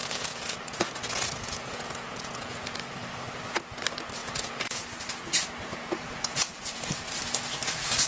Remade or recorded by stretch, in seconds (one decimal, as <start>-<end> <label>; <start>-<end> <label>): 0.0-2.8 remade; 2.8-4.2 recorded; 4.2-4.8 remade; 4.8-5.7 recorded; 5.7-6.8 remade; 6.8-8.1 recorded